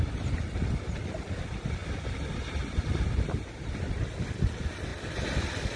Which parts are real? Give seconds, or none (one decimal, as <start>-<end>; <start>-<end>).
0.0-5.8